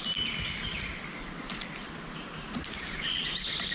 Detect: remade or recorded recorded